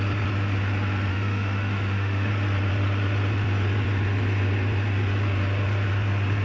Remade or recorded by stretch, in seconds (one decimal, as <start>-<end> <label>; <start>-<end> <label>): 0.0-1.1 recorded; 1.1-2.3 remade; 2.3-6.4 recorded